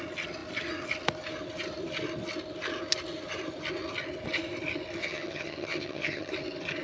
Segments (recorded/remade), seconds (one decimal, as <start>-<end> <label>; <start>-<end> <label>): 0.0-5.0 recorded; 5.0-6.3 remade; 6.3-6.8 recorded